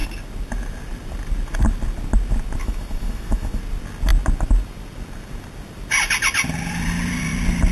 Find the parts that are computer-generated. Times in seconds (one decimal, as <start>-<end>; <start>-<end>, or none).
2.6-3.6